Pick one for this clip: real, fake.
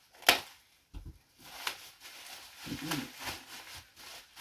real